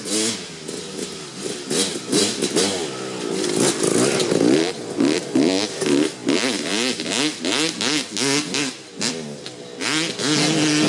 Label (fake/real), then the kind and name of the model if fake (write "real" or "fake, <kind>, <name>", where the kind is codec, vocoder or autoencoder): real